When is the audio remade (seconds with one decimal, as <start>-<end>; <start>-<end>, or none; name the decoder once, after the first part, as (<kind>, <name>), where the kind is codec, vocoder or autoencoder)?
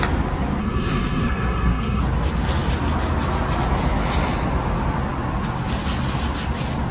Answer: 0.6-2.0 (codec, SNAC)